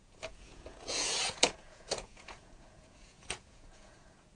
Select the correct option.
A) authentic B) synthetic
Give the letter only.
B